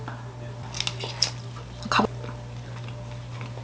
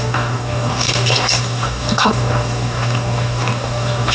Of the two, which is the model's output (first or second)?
second